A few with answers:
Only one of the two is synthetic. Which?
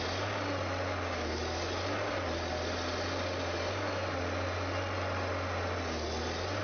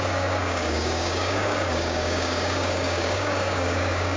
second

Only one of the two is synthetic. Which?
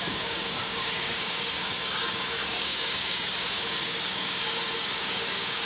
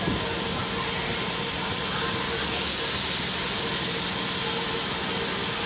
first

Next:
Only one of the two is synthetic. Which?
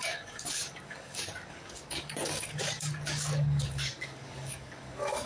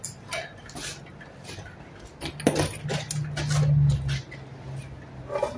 first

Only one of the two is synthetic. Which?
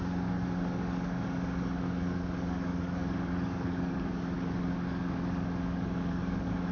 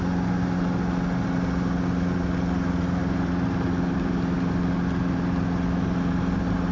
first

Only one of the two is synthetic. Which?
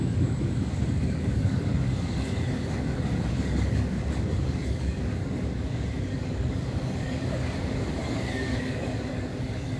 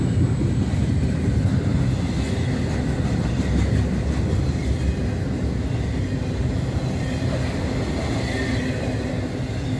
first